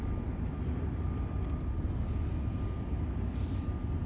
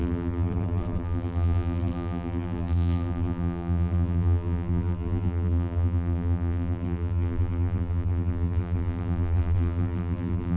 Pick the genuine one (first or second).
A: first